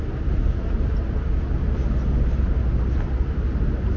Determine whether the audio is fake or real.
real